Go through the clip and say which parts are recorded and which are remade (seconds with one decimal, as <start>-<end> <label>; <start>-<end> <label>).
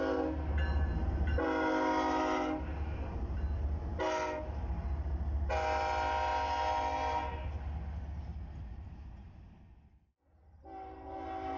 0.0-11.6 recorded